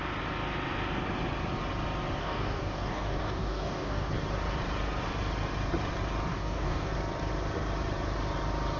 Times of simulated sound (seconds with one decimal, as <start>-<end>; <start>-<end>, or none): 2.2-4.1; 6.3-6.9

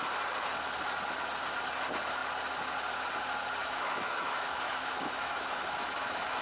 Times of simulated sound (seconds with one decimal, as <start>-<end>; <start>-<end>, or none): 3.6-6.4

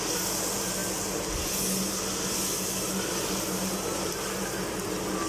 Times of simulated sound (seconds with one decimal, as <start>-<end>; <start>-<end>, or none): none

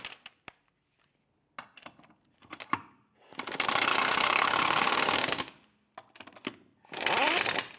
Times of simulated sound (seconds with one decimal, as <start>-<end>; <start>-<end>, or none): 3.9-5.4

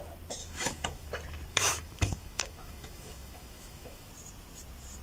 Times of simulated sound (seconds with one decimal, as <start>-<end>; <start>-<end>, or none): 0.4-1.1; 1.5-4.1